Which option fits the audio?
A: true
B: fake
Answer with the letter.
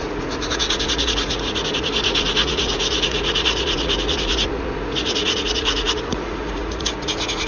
B